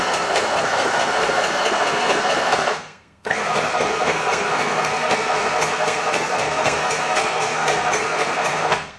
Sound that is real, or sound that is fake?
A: fake